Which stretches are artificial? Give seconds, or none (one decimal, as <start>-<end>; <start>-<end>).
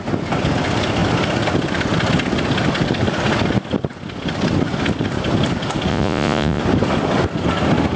5.9-6.6